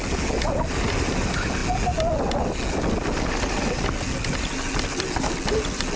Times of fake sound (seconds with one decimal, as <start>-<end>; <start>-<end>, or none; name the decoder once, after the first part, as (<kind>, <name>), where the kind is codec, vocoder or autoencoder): none